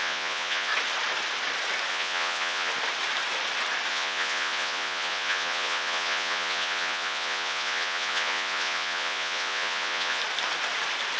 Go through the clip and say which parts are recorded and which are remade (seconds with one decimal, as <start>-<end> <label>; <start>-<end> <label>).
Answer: 0.0-0.7 remade; 0.7-1.9 recorded; 1.9-2.7 remade; 2.7-3.9 recorded; 3.9-10.2 remade; 10.2-11.2 recorded